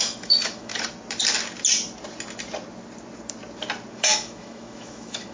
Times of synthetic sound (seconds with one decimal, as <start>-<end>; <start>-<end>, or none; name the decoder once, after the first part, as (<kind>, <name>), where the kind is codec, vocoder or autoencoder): 0.0-0.7 (autoencoder, DAC-VAE); 3.9-5.3